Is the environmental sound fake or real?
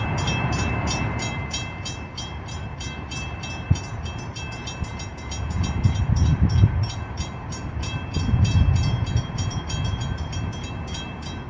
fake